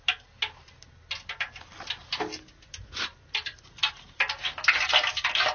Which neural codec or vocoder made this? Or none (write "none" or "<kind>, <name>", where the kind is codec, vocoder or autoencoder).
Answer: none